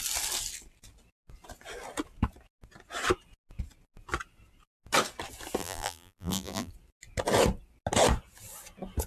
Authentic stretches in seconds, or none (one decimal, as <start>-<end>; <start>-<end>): 0.0-5.6; 6.7-9.1